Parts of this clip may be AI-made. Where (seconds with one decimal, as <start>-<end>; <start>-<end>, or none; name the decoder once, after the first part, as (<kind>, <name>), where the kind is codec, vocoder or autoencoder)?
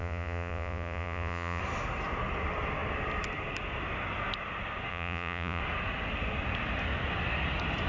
0.0-1.6 (vocoder, Vocos); 4.9-5.6